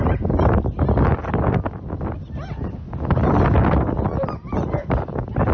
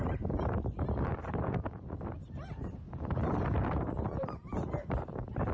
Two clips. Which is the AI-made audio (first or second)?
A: second